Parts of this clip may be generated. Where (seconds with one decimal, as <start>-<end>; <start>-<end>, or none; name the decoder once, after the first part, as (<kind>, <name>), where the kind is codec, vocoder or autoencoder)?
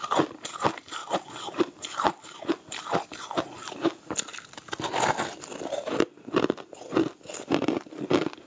none